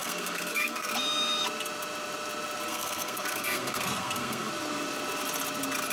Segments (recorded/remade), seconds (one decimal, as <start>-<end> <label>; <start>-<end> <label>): 0.0-0.9 remade; 0.9-2.7 recorded; 2.7-4.5 remade; 4.5-5.9 recorded